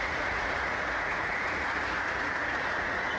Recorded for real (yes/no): no